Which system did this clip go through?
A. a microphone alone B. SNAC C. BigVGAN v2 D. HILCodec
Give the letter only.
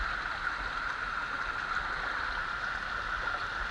A